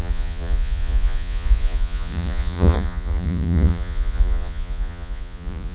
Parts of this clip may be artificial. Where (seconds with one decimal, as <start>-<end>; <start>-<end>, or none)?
0.0-5.7